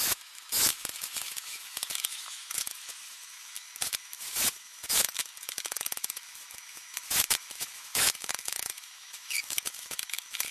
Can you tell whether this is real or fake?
fake